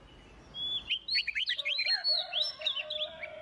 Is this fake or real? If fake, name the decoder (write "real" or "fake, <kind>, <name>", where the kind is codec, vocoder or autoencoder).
real